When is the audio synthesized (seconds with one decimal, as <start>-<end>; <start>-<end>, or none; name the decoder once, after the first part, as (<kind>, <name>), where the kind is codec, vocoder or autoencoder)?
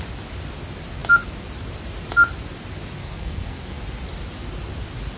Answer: 3.0-3.8 (codec, SNAC)